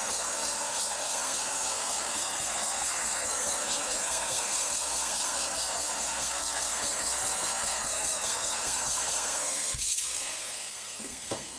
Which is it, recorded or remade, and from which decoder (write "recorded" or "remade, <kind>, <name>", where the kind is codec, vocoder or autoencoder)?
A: remade, codec, SNAC